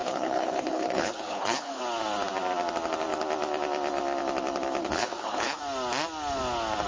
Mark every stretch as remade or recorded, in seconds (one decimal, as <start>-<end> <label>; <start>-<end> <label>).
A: 0.0-1.8 remade; 1.8-4.8 recorded; 4.8-5.6 remade; 5.6-6.9 recorded